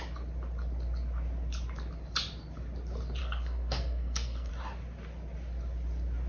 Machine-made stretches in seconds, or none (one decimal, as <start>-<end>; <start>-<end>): 3.2-4.5